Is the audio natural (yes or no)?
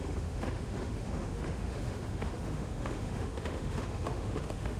no